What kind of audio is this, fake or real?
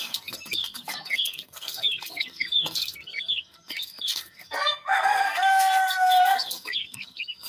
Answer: fake